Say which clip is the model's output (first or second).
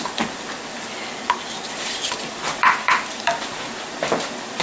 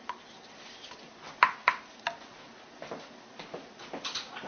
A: first